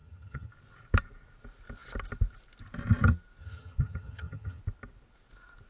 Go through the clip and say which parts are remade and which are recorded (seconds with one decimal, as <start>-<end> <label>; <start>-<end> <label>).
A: 0.0-0.5 remade; 0.5-3.4 recorded; 3.4-4.6 remade; 4.6-5.7 recorded